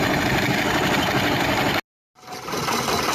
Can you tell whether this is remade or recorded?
recorded